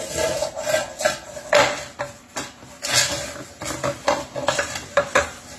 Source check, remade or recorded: recorded